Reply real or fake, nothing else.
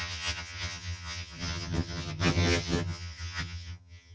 fake